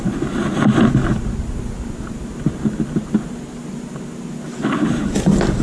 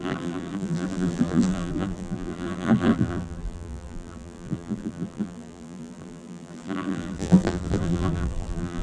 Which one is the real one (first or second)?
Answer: first